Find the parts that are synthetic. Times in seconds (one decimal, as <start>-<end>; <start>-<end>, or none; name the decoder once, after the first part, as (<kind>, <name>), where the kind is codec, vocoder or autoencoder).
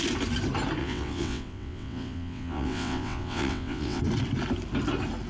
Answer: 0.8-4.0 (vocoder, WaveNeXt)